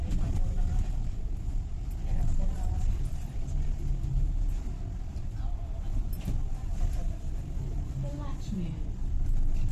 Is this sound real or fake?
real